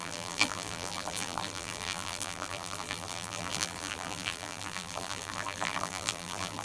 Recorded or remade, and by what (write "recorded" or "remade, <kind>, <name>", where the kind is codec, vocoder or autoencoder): remade, vocoder, BigVGAN v2